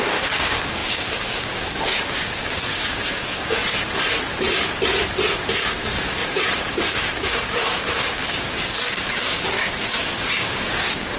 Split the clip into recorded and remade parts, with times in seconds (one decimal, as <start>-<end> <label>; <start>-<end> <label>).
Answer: 0.0-3.6 remade; 3.6-5.6 recorded; 5.6-11.2 remade